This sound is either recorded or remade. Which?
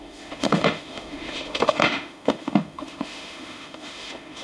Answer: remade